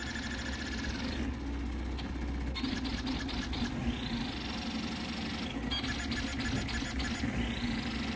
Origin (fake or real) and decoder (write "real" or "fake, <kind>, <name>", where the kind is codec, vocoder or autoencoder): real